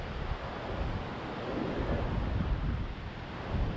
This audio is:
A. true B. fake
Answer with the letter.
A